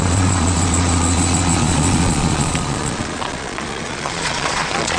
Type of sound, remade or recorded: remade